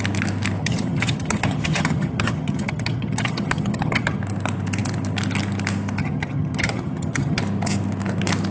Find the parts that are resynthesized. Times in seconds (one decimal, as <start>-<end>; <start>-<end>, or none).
0.6-4.2; 6.0-7.4